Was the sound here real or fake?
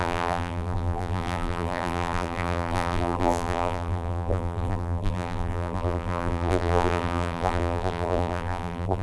fake